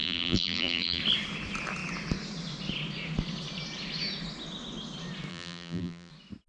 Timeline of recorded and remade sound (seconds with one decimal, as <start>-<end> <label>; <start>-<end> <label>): 0.0-1.0 remade; 1.0-5.3 recorded; 5.3-6.1 remade; 6.1-6.5 recorded